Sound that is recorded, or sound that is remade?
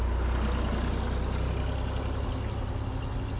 recorded